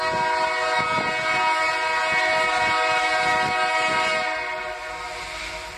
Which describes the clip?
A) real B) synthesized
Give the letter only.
A